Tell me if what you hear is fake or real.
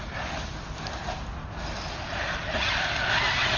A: real